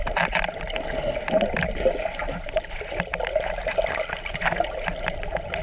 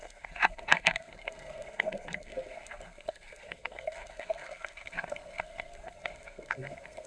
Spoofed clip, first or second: second